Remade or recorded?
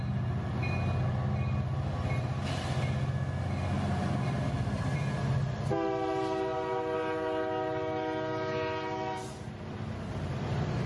recorded